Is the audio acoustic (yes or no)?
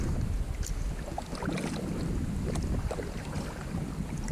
yes